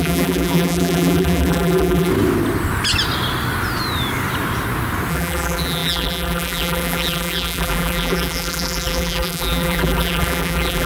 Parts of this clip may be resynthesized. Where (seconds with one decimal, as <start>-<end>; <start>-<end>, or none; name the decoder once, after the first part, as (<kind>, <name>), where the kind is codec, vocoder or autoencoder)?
0.0-2.1 (vocoder, BigVGAN v2); 5.1-10.9